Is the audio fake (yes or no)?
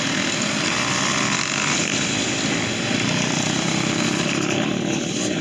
no